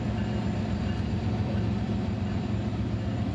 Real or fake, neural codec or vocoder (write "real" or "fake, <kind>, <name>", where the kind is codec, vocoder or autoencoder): fake, vocoder, BigVGAN v2